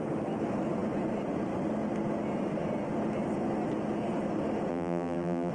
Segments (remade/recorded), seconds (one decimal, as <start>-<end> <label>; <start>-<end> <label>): 0.0-4.7 recorded; 4.7-5.5 remade